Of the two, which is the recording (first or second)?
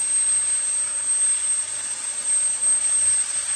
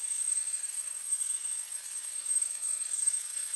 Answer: first